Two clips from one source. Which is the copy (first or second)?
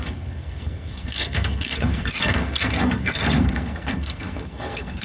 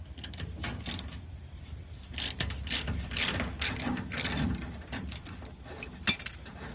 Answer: first